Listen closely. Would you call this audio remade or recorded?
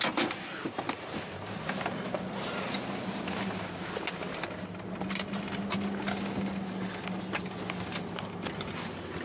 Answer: recorded